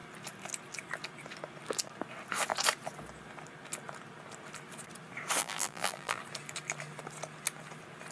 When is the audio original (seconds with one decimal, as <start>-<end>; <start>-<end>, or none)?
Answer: 0.0-5.4; 6.2-8.1